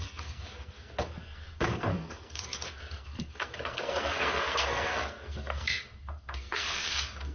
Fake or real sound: fake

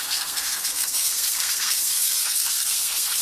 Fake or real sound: fake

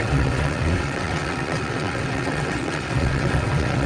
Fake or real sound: fake